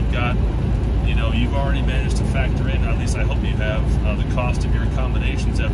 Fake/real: real